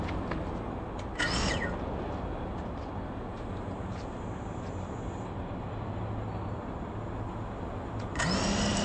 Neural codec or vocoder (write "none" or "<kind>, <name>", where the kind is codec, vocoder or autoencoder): none